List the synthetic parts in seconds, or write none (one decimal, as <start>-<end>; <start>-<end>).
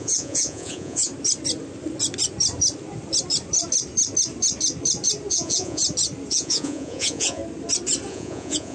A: 0.0-1.1; 5.3-5.8; 6.3-7.4; 8.1-8.7